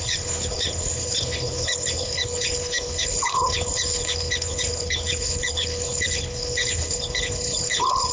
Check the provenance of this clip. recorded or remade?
remade